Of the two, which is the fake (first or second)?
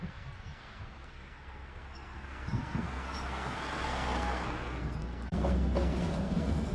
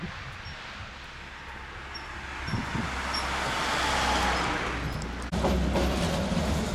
first